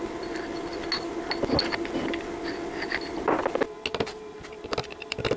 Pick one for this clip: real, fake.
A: real